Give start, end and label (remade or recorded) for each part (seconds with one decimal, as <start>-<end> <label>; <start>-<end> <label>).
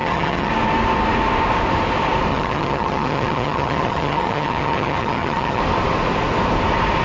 0.0-0.5 remade; 0.5-2.3 recorded; 2.3-5.6 remade; 5.6-7.0 recorded